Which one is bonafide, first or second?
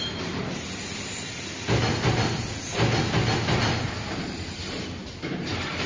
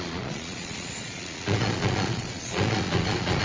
first